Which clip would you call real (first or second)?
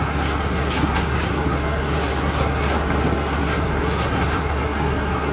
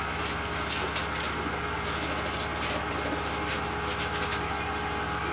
second